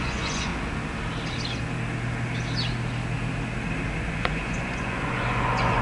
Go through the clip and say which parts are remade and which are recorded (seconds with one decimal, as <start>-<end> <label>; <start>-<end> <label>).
0.0-0.5 remade; 0.5-4.0 recorded; 4.0-5.8 remade